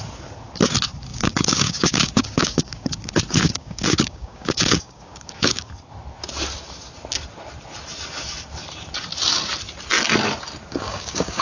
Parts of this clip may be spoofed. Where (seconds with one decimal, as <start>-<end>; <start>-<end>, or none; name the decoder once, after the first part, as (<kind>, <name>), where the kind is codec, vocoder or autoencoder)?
1.1-5.7 (codec, DAC); 10.7-11.4